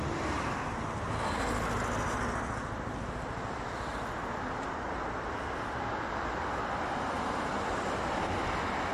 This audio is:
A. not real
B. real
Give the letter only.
B